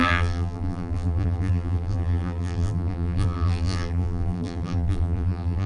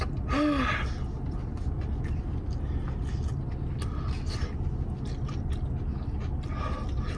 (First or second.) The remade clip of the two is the first